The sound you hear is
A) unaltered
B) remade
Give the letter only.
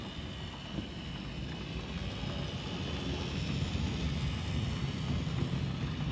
A